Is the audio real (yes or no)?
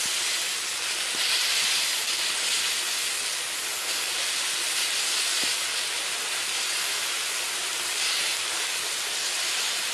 yes